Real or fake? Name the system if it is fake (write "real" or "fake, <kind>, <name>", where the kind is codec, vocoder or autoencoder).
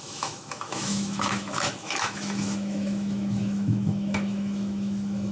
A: fake, autoencoder, DAC-VAE